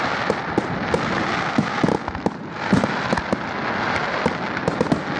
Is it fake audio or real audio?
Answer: real